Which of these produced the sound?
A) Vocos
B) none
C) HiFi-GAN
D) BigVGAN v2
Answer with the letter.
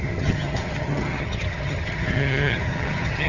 C